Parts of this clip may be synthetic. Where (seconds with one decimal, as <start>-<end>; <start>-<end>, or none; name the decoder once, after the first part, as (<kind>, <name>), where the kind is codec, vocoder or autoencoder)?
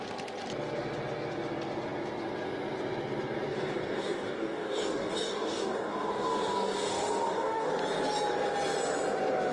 3.5-7.7 (codec, DAC)